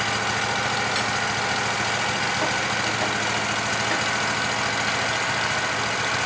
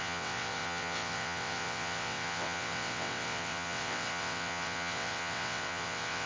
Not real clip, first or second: second